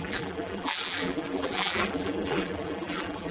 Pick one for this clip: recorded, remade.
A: remade